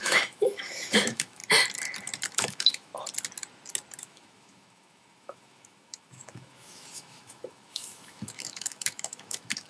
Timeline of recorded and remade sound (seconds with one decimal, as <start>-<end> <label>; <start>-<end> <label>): 0.0-1.4 remade; 1.4-2.3 recorded; 2.3-2.9 remade; 2.9-4.0 recorded; 4.0-9.7 remade